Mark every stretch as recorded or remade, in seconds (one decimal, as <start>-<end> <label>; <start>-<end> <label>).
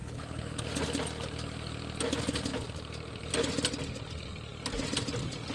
0.0-0.6 remade; 0.6-5.5 recorded